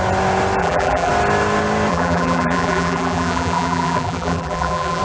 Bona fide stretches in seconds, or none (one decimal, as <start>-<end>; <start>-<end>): 0.0-0.6; 1.1-1.9